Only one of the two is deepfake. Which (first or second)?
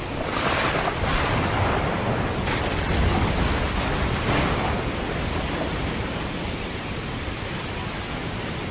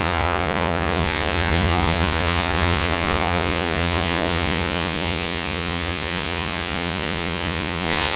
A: second